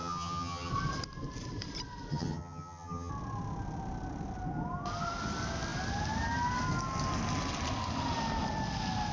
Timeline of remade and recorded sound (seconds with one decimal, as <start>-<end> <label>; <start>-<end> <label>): 0.0-0.7 remade; 0.7-2.1 recorded; 2.1-3.1 remade; 3.1-9.1 recorded